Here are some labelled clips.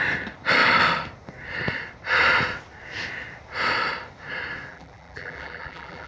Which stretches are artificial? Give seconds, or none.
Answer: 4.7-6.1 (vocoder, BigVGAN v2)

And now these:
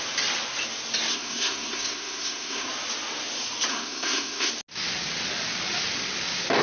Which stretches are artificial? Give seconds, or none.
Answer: 1.1-2.7 (codec, SNAC); 3.7-4.5

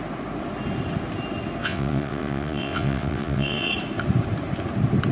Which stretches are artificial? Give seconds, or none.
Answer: 1.6-3.7 (vocoder, WaveNeXt)

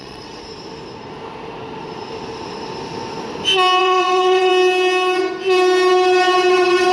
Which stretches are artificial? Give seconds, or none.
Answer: 0.0-0.4 (vocoder, WaveNeXt); 3.8-4.5; 6.5-6.9

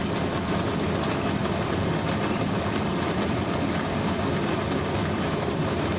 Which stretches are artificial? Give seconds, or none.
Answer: none

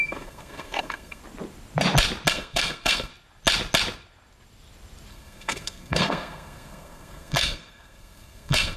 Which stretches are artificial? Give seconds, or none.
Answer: 0.0-1.2 (codec, SNAC); 2.3-3.1; 5.1-8.8

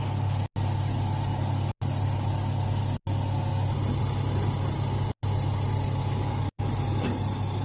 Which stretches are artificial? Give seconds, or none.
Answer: 6.0-6.6 (autoencoder, DAC-VAE)